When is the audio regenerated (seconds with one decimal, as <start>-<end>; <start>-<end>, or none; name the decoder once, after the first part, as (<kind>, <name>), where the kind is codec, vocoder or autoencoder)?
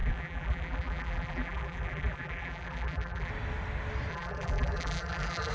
0.0-3.3 (vocoder, BigVGAN v2); 4.1-5.5